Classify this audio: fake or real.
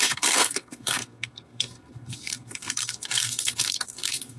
fake